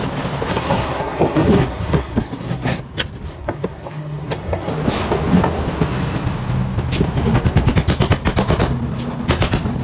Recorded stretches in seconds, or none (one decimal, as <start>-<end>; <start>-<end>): 0.0-0.5; 2.8-3.3; 4.7-9.8